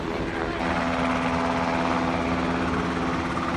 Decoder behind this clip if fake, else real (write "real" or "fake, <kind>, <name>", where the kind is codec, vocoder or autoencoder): real